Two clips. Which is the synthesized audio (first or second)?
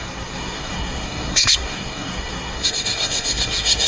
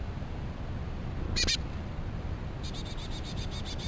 first